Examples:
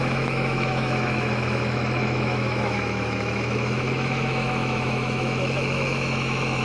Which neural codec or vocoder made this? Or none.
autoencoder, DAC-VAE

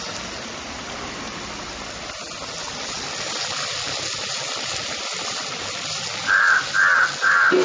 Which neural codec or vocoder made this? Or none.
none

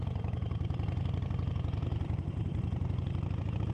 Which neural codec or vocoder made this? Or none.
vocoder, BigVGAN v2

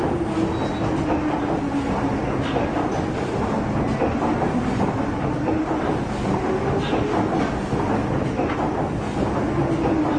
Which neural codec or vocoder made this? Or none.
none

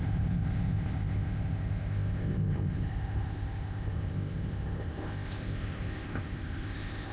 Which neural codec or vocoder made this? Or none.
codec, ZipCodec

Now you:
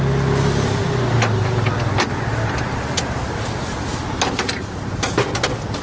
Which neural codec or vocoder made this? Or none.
none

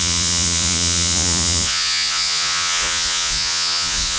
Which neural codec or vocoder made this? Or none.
vocoder, Vocos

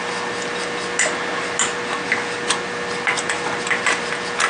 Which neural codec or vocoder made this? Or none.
none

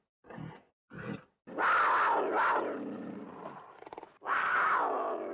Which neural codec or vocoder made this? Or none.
none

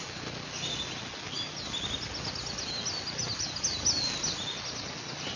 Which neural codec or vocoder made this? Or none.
none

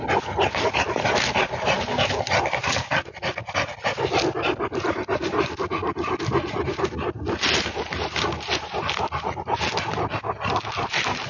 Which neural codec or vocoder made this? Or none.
none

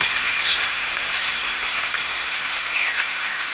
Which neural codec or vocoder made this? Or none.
codec, SNAC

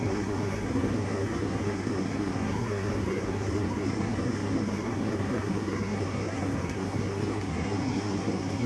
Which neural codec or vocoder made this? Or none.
codec, SNAC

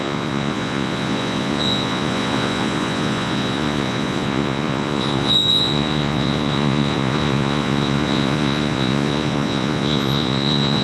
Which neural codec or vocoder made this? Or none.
vocoder, Vocos